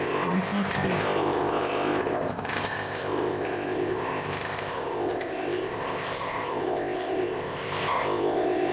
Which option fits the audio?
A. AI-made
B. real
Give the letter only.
A